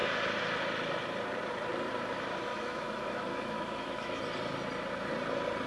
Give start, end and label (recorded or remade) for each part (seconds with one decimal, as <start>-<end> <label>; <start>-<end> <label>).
0.0-2.5 recorded; 2.5-4.2 remade; 4.2-5.7 recorded